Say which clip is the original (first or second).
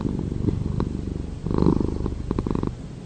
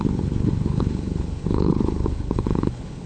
first